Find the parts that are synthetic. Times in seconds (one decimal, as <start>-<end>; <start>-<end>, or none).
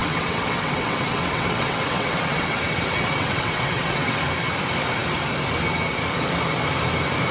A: 0.0-4.2